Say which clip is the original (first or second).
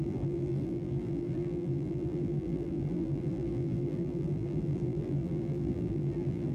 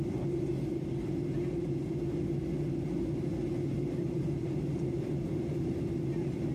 second